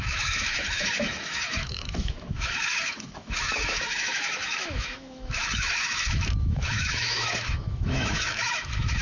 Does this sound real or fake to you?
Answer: fake